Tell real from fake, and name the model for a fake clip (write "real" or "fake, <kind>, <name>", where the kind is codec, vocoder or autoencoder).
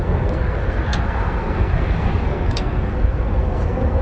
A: fake, codec, SNAC